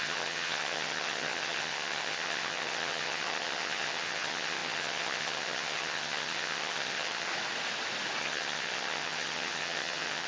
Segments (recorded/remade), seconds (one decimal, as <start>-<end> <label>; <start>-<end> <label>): 0.0-7.3 remade; 7.3-8.2 recorded; 8.2-10.3 remade